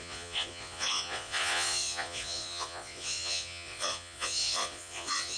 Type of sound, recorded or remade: remade